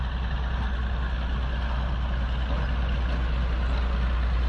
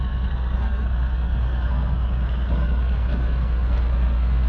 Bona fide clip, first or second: first